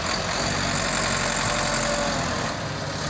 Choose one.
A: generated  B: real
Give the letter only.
B